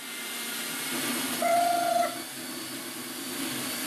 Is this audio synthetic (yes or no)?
no